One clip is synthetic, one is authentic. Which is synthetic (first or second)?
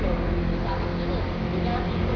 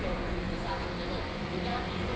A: second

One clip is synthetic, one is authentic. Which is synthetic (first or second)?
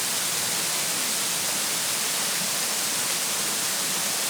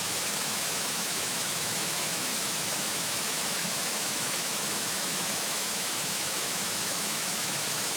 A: second